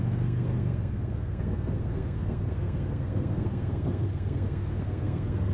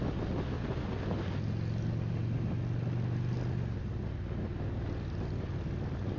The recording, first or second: second